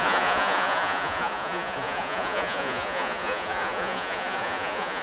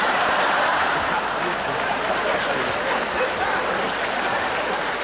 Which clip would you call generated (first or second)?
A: first